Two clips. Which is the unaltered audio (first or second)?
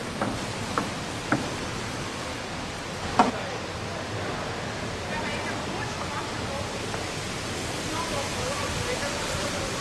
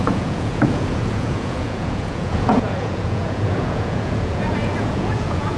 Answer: first